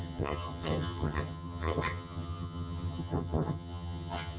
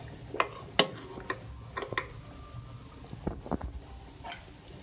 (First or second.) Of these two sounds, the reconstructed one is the first